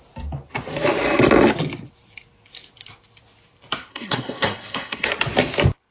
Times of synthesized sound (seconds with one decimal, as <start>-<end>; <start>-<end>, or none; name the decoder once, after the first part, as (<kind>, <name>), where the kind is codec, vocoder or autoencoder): 3.9-5.1 (codec, SNAC)